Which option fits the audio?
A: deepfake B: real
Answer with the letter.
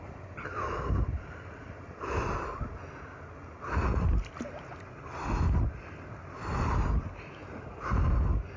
B